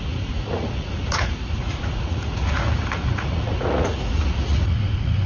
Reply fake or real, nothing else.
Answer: fake